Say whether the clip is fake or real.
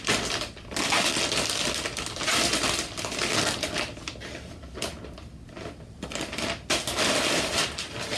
real